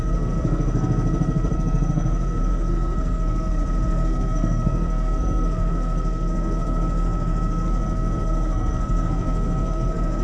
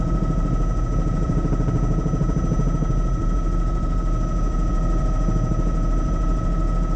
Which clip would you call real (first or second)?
second